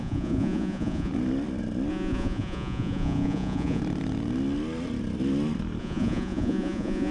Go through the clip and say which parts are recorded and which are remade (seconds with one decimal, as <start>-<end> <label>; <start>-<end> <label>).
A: 0.0-1.1 remade; 1.1-1.9 recorded; 1.9-3.8 remade; 3.8-5.8 recorded; 5.8-7.1 remade